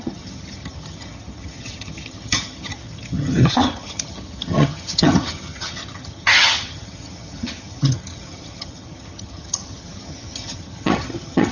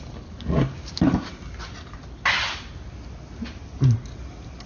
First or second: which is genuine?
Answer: second